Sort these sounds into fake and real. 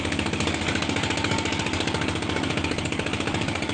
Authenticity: fake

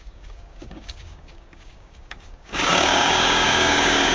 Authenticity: fake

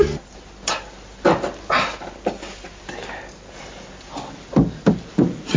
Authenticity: real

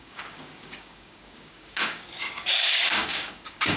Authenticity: fake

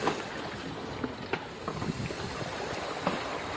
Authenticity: real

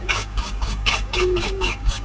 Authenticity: fake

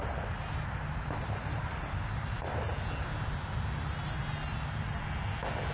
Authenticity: real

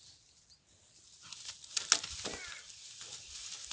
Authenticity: real